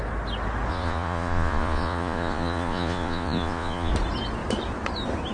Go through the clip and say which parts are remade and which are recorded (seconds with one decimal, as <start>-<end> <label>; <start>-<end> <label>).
0.0-0.7 recorded; 0.7-3.9 remade; 3.9-5.3 recorded